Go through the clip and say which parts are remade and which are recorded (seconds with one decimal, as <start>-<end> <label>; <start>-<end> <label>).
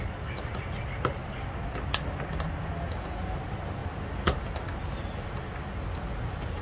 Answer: 0.0-1.2 remade; 1.2-3.4 recorded; 3.4-3.8 remade; 3.8-6.6 recorded